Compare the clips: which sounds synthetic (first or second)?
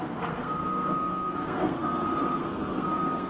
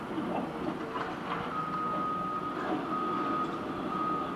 first